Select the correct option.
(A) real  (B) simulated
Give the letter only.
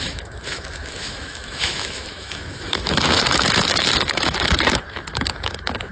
B